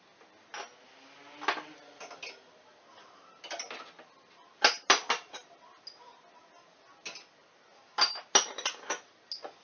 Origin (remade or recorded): recorded